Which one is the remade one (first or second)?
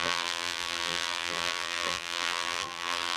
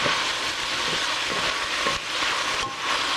first